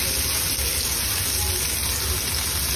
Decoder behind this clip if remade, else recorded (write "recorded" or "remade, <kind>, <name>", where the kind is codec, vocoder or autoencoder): recorded